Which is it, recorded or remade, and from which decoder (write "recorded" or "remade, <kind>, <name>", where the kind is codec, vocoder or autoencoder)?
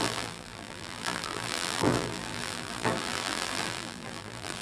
remade, vocoder, BigVGAN v2